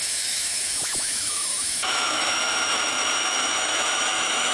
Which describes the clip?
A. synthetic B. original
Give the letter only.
A